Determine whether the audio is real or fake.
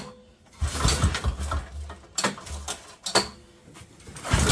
real